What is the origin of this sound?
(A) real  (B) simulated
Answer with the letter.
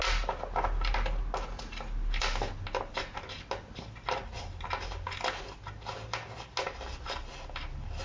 A